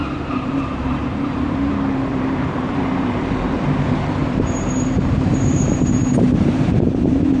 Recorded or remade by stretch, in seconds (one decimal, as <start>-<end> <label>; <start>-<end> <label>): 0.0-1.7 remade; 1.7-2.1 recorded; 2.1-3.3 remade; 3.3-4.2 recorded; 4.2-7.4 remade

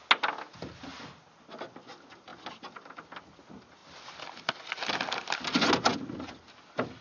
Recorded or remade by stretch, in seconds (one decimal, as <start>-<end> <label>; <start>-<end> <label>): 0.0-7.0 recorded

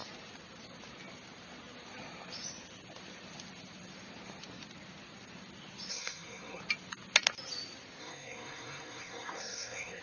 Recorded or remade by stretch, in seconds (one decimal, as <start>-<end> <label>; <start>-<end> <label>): 0.0-5.9 recorded; 5.9-6.6 remade; 6.6-8.0 recorded; 8.0-10.0 remade

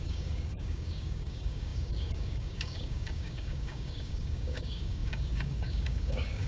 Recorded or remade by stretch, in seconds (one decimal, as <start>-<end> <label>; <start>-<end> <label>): 0.0-6.5 remade

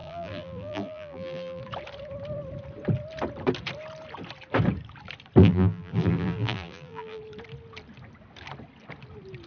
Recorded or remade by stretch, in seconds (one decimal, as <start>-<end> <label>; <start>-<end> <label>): 0.0-1.6 remade; 1.6-5.4 recorded; 5.4-7.2 remade; 7.2-9.5 recorded

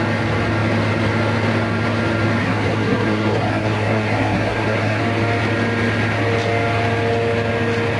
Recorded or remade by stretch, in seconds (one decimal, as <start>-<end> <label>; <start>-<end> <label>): 0.0-2.4 recorded; 2.4-5.0 remade; 5.0-8.0 recorded